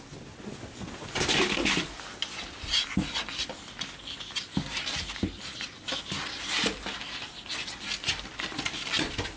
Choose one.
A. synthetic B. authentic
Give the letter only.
B